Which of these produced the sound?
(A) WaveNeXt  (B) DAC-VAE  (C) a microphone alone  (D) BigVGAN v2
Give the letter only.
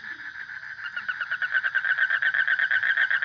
D